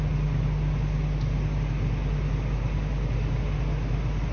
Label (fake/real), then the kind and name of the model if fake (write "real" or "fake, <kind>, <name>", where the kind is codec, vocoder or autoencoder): real